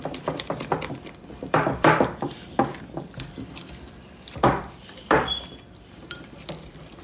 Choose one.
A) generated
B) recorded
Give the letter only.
A